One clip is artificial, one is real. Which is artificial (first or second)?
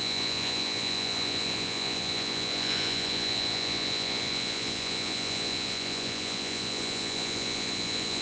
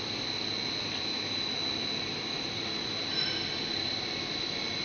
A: first